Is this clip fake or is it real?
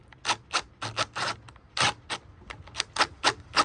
real